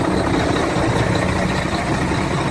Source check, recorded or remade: recorded